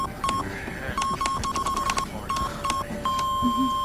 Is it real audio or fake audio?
real